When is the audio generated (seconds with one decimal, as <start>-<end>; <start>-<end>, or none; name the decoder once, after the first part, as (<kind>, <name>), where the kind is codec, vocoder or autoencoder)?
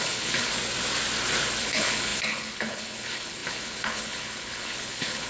0.0-0.5 (codec, HILCodec); 1.6-5.3